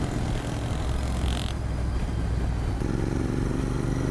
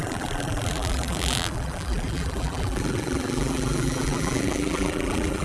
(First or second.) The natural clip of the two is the first